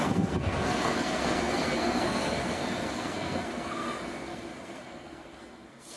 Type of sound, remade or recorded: remade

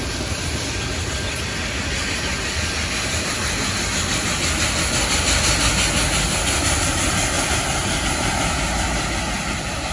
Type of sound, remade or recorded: recorded